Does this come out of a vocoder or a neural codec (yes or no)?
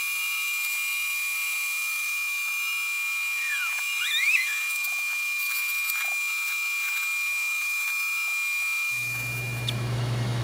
yes